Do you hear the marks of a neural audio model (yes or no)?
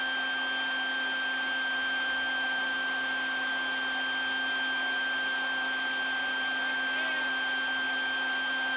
no